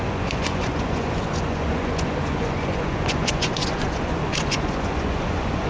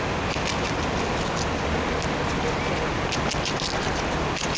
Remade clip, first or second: first